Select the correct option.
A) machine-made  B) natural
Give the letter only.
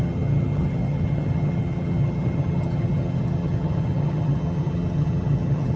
A